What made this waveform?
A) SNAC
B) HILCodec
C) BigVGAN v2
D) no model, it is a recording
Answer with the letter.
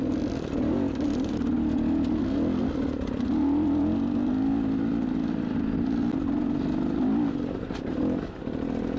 D